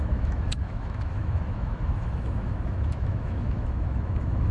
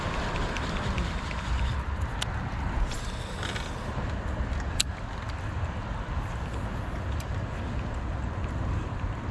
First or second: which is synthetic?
first